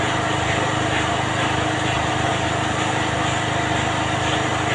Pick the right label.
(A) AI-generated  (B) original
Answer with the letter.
B